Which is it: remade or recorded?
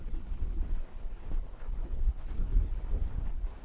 remade